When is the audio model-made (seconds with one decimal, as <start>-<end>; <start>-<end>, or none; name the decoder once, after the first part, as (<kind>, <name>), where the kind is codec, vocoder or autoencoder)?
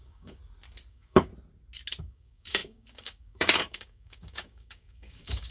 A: 0.0-0.4 (codec, DAC); 0.9-1.3; 2.0-5.5